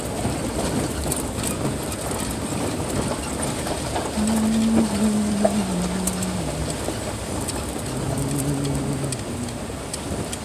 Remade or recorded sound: recorded